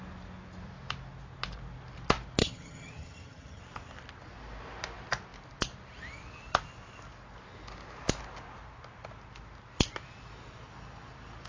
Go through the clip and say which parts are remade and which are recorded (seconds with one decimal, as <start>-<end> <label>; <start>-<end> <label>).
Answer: 0.0-2.4 recorded; 2.4-3.6 remade; 3.6-11.5 recorded